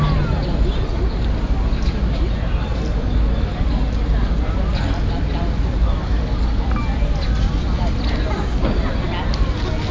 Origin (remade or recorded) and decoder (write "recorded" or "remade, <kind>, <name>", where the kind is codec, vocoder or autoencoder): recorded